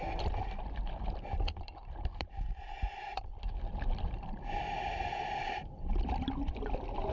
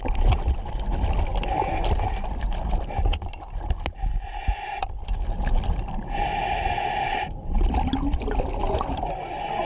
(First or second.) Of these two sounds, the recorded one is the second